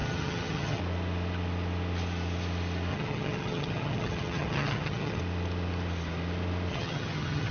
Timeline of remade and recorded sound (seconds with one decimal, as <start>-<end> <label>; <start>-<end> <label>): 0.0-0.8 remade; 0.8-2.9 recorded; 2.9-5.2 remade; 5.2-6.7 recorded; 6.7-7.5 remade